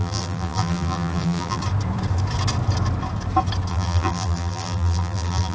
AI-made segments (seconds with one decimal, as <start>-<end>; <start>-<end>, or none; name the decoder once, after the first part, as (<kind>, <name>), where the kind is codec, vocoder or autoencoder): 0.0-1.6 (vocoder, BigVGAN v2); 3.7-5.5